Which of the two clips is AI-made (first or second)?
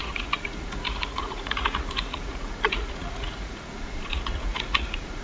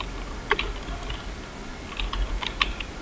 first